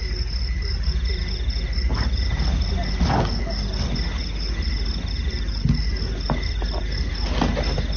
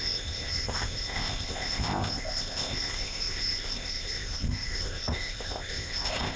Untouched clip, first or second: first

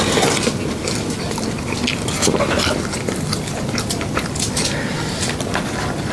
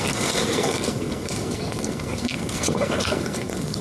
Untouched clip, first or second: first